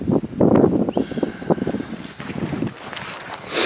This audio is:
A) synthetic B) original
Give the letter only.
B